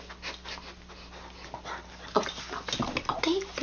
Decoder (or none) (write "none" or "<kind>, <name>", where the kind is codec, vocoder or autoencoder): none